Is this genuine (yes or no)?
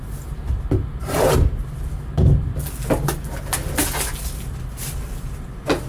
yes